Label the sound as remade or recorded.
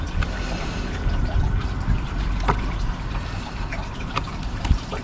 remade